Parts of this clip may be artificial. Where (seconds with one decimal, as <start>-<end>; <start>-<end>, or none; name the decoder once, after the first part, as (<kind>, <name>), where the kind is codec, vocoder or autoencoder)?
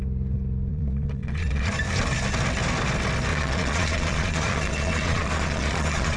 0.7-1.7 (vocoder, Vocos); 3.3-6.2